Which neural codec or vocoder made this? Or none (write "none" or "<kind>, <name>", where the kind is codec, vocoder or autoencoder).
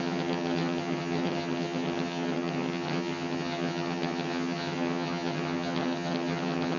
vocoder, HiFi-GAN